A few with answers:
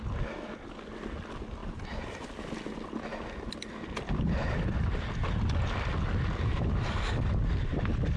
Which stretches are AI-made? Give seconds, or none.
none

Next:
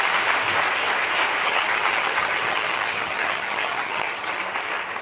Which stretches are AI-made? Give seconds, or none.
1.4-4.4 (vocoder, HiFi-GAN)

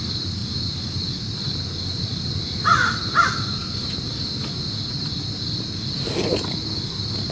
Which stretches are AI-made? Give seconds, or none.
2.1-4.1 (vocoder, BigVGAN v2)

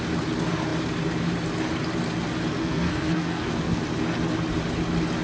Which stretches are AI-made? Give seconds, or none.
2.6-3.8 (codec, SNAC)